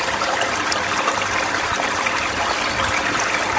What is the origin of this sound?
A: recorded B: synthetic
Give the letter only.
A